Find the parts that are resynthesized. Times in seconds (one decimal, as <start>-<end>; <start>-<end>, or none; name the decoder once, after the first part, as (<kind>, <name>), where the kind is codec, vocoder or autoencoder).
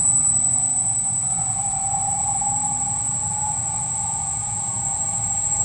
0.0-0.7 (vocoder, Vocos); 1.3-5.6